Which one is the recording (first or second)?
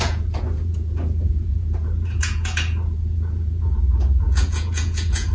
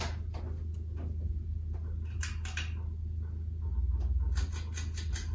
second